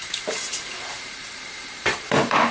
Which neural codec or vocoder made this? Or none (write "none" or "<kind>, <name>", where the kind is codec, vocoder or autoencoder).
vocoder, BigVGAN v2